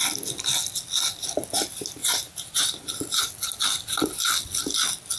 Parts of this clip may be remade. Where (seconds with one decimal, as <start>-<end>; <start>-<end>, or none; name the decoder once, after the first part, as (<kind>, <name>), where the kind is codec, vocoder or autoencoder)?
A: 2.0-3.2 (vocoder, BigVGAN v2)

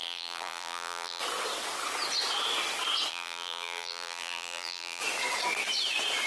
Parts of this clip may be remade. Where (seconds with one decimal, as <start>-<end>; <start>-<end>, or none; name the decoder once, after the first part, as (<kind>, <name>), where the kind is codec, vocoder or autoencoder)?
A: 0.0-1.2 (vocoder, BigVGAN v2); 3.1-5.0

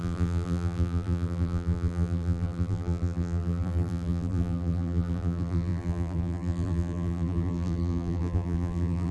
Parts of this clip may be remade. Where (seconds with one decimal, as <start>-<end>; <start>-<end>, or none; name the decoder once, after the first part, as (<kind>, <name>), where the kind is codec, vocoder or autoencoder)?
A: 0.0-9.1 (vocoder, BigVGAN v2)

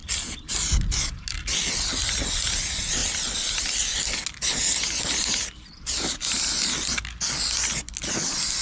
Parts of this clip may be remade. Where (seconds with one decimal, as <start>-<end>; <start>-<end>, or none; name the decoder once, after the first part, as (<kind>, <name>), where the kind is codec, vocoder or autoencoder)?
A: 3.0-3.9 (vocoder, BigVGAN v2)

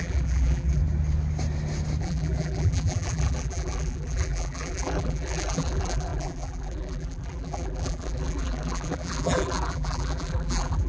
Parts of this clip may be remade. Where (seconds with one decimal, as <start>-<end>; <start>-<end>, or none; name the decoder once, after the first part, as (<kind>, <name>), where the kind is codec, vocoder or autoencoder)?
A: 0.0-0.8 (vocoder, BigVGAN v2); 2.0-10.9

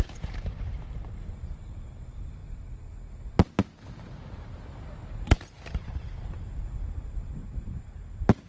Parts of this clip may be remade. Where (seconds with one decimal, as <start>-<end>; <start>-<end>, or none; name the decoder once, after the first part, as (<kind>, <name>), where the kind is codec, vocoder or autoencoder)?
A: 0.0-2.4 (vocoder, BigVGAN v2); 5.7-8.5